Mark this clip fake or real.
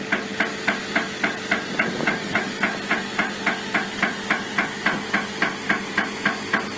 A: real